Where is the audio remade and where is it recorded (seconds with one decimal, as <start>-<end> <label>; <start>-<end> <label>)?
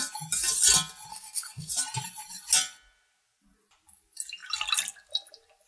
0.0-1.1 recorded; 1.1-1.7 remade; 1.7-5.7 recorded